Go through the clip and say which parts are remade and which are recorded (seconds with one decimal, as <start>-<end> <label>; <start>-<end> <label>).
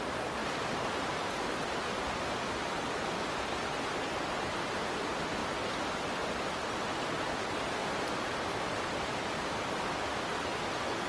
0.0-7.8 recorded; 7.8-10.3 remade; 10.3-11.1 recorded